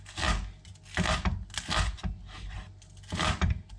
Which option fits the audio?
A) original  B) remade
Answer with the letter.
A